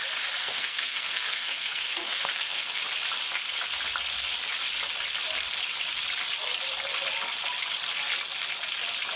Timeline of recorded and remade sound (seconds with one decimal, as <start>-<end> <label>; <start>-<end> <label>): 0.0-0.4 recorded; 0.4-2.8 remade; 2.8-9.2 recorded